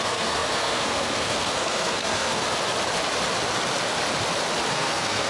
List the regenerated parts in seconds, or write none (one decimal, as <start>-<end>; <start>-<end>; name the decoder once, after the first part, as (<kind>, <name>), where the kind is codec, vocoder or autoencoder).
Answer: 0.0-2.4 (codec, SNAC); 4.7-5.3

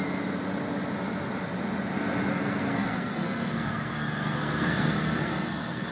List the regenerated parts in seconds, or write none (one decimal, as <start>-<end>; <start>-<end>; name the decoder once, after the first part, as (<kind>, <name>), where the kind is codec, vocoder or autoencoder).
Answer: 2.3-5.9 (codec, SNAC)

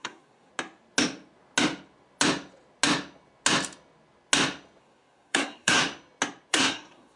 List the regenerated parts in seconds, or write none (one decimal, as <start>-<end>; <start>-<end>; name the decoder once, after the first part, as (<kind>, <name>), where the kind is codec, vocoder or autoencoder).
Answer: 0.0-0.5 (codec, SNAC); 4.8-5.8; 6.5-7.2

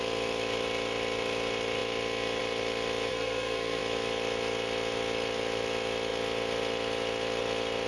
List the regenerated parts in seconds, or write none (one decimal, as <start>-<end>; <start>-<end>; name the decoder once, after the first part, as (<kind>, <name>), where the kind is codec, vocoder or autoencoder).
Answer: 3.1-3.8 (codec, SNAC)

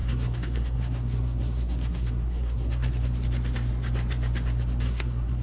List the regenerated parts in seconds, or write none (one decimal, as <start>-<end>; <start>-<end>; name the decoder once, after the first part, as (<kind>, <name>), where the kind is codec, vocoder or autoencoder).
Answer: 0.0-3.1 (codec, SNAC); 4.8-5.4

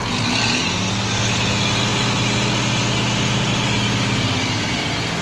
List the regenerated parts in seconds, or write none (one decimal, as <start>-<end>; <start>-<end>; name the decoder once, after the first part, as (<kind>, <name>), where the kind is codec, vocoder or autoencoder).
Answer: none